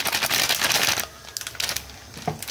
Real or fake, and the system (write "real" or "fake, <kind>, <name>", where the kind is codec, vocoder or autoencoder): real